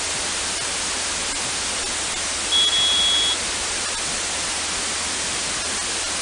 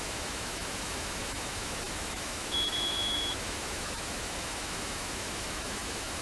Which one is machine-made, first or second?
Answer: second